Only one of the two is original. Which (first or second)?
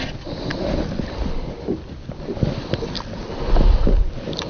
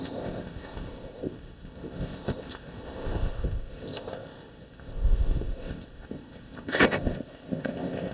first